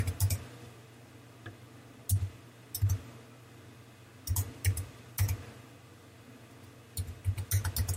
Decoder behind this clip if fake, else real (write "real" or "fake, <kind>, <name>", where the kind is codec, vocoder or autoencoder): real